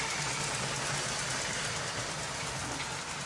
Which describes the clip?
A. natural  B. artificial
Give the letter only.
A